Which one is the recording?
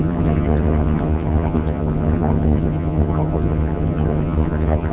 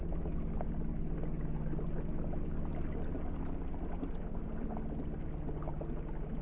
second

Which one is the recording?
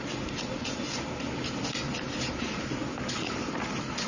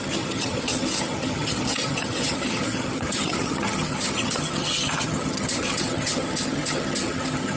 first